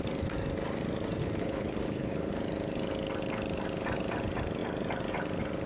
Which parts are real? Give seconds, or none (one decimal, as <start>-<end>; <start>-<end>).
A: 0.0-1.2; 2.3-5.7